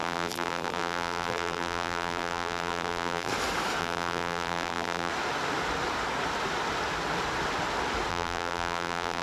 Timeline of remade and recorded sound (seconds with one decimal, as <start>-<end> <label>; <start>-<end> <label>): 0.0-3.3 remade; 3.3-3.8 recorded; 3.8-5.1 remade; 5.1-8.1 recorded; 8.1-9.2 remade